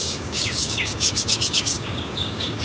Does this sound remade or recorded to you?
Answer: remade